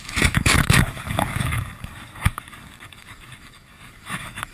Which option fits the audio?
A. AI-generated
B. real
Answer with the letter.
A